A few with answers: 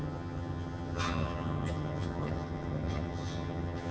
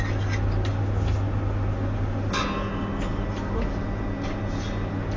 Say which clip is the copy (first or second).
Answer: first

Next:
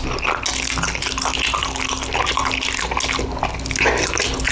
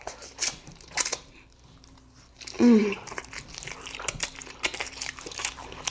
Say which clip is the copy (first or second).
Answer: second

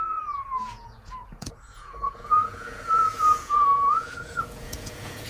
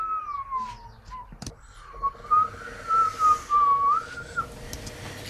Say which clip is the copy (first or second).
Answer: first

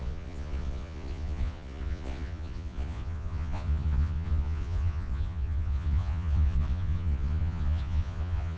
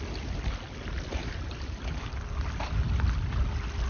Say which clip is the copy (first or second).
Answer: first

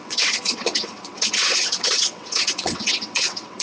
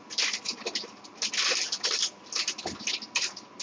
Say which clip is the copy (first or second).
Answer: first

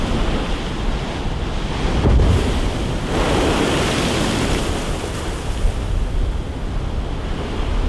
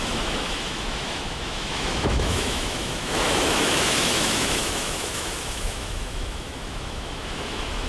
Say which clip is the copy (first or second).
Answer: second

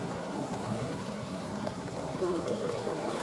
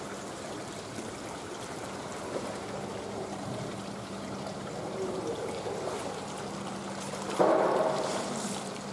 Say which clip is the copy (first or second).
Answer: first